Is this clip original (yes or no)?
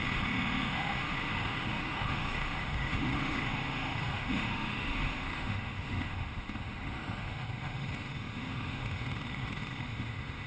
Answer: no